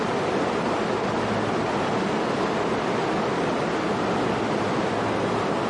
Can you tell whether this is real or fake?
real